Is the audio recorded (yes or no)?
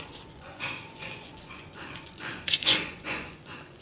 no